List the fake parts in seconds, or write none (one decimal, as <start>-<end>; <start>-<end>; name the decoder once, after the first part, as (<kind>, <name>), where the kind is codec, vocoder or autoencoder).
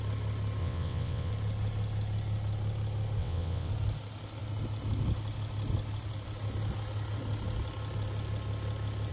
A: 0.6-1.3 (vocoder, WaveNeXt); 3.2-3.7